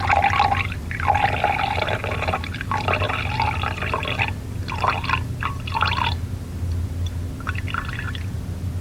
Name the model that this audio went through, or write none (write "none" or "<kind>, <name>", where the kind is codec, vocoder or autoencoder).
none